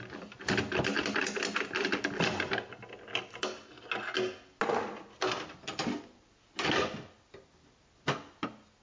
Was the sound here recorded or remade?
recorded